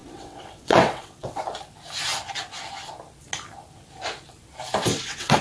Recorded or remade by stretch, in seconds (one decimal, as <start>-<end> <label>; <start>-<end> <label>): 0.0-1.4 remade; 1.4-4.9 recorded; 4.9-5.4 remade